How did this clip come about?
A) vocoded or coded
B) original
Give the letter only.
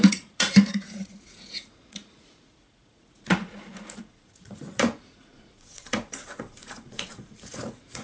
A